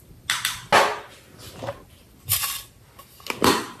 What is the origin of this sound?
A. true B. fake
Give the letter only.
A